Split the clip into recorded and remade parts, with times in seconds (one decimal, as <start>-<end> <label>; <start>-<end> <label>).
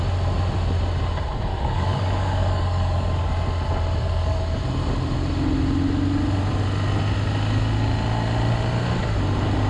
0.0-1.5 recorded; 1.5-3.3 remade; 3.3-4.0 recorded; 4.0-4.6 remade; 4.6-9.7 recorded